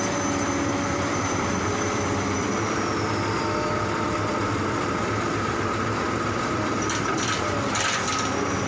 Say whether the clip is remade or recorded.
remade